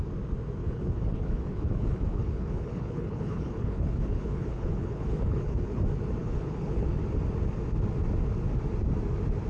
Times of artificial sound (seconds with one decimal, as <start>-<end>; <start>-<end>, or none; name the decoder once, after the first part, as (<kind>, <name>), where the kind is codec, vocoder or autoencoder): 0.6-5.8 (codec, HILCodec); 6.2-6.9